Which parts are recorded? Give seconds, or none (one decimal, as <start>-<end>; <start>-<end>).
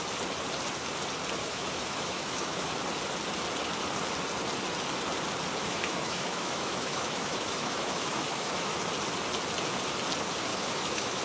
0.0-1.4; 2.7-5.6; 8.8-10.5